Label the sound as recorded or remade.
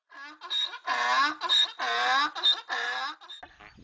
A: recorded